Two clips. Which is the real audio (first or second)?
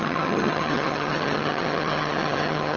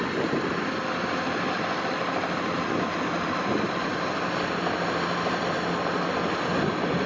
second